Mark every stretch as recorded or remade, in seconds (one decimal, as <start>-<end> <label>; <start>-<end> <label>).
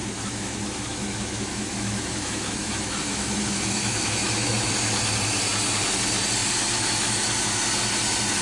0.0-4.7 remade; 4.7-8.4 recorded